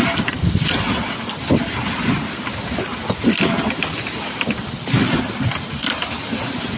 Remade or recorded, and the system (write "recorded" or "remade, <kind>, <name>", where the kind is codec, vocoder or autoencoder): recorded